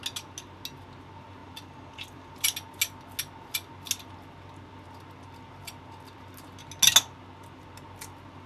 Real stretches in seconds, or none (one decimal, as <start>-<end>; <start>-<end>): 0.0-1.4; 2.3-8.5